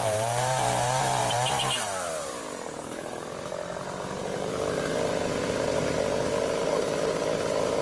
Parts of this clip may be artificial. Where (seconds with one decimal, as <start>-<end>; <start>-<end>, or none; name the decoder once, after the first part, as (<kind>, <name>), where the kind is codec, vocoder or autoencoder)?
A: 0.0-7.8 (vocoder, BigVGAN v2)